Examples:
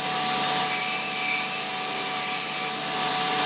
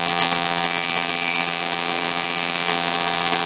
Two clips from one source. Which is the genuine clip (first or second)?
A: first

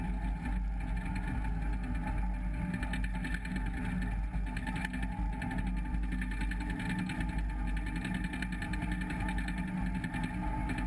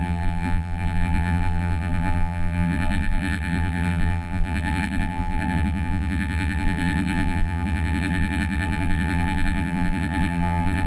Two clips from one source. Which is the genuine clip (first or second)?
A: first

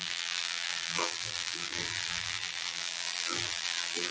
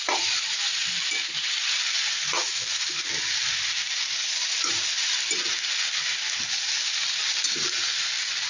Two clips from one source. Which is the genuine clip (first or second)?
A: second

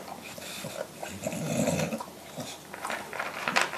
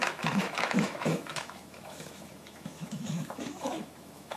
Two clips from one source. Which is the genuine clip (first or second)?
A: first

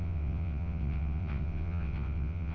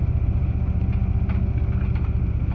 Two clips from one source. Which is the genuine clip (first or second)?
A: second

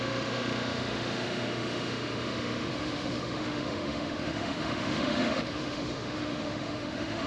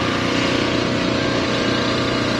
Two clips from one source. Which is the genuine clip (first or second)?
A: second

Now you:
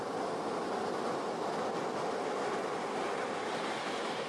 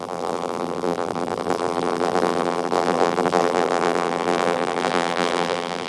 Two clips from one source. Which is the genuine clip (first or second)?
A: first